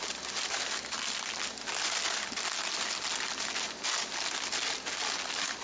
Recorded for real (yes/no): yes